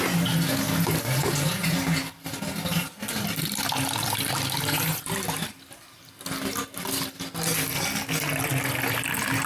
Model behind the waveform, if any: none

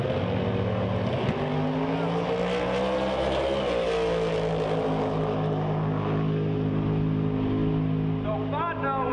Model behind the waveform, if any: none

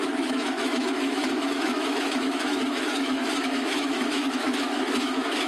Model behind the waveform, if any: autoencoder, DAC-VAE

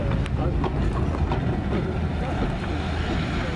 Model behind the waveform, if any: none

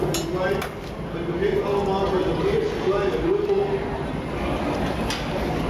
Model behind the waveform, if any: none